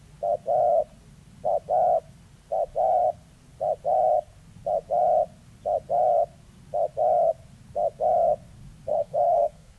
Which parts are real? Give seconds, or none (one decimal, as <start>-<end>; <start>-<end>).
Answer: 0.0-8.9